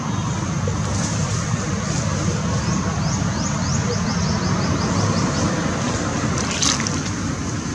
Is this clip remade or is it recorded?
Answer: recorded